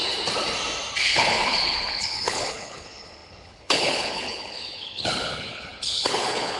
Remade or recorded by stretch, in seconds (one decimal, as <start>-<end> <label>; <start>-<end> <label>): 0.0-1.0 recorded; 1.0-6.6 remade